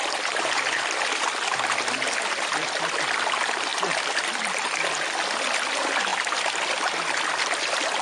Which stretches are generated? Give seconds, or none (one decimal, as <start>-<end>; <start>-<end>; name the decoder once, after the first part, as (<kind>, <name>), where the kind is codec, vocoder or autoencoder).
3.7-4.9 (vocoder, BigVGAN v2)